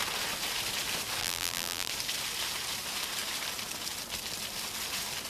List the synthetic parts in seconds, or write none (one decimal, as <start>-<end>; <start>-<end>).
1.2-1.9